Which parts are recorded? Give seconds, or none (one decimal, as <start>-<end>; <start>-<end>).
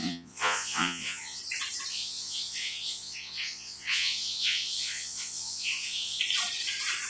1.4-1.9; 6.2-7.1